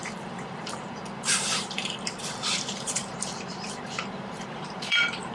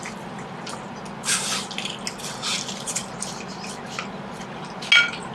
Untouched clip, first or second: second